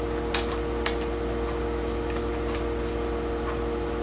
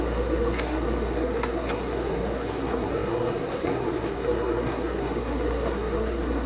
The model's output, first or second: second